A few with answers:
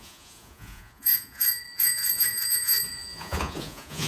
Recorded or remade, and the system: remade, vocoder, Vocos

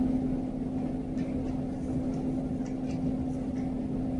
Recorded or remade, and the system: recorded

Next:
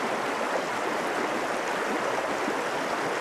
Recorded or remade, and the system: recorded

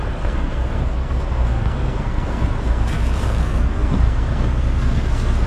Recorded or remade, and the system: remade, codec, SNAC